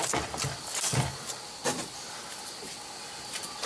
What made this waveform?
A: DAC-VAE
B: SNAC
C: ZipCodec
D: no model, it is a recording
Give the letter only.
D